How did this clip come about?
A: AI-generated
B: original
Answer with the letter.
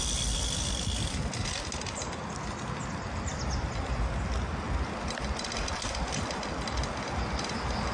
B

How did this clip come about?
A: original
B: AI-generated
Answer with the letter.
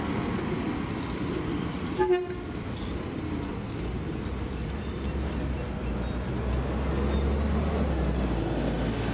A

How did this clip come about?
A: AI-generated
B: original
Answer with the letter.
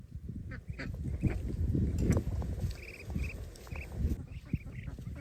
B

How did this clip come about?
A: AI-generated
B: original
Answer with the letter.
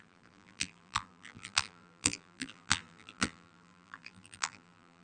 A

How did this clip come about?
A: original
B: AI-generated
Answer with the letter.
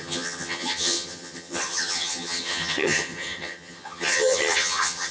B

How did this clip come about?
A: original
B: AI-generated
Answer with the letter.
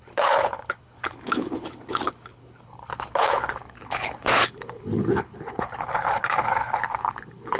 B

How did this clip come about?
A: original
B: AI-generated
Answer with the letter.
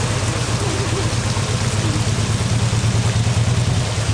A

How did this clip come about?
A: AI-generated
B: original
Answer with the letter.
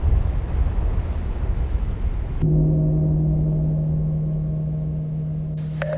A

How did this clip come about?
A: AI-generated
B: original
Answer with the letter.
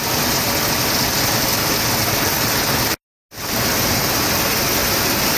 B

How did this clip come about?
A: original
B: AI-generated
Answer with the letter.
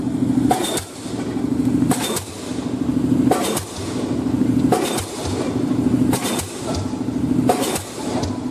A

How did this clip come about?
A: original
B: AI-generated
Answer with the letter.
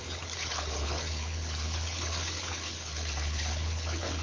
B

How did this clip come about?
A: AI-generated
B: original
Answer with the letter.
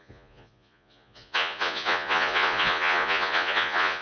A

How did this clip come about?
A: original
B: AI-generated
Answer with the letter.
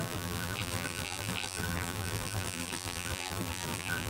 B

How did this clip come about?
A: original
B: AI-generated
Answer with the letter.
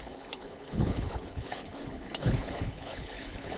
B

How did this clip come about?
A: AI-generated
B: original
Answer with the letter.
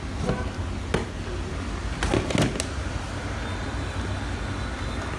B